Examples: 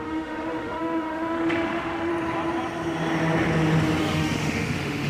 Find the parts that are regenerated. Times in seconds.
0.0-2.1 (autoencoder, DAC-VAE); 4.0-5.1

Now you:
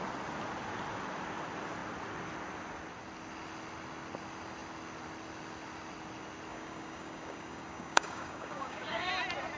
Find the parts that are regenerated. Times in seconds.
6.5-9.1 (codec, DAC)

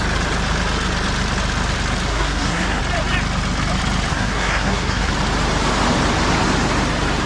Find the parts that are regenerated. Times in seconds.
2.1-2.8 (codec, SNAC); 4.1-5.1

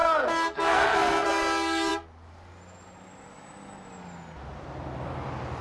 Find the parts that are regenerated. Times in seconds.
0.0-1.3 (codec, SNAC)

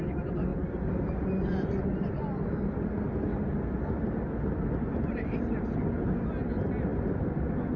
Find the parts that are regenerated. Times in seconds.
none

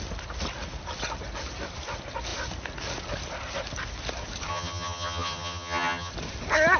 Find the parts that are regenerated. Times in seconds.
4.5-6.1 (vocoder, HiFi-GAN)